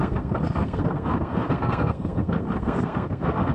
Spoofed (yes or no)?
yes